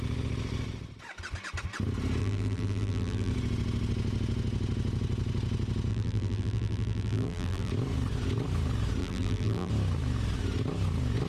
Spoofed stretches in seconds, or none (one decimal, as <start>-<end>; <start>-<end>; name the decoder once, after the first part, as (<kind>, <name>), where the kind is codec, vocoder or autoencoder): 2.2-3.3 (vocoder, BigVGAN v2); 5.9-7.7; 9.0-9.7